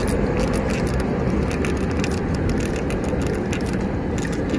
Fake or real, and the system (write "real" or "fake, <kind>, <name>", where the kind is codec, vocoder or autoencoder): real